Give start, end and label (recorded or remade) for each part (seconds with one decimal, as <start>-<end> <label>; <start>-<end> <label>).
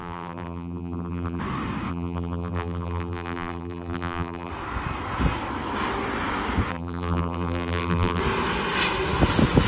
0.0-1.4 remade; 1.4-1.9 recorded; 1.9-4.5 remade; 4.5-6.7 recorded; 6.7-8.2 remade; 8.2-9.7 recorded